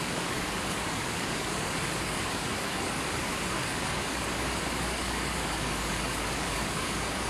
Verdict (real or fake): fake